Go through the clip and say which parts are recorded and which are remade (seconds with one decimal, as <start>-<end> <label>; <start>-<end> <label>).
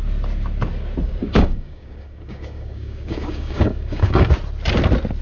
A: 0.0-1.2 recorded; 1.2-4.3 remade; 4.3-5.2 recorded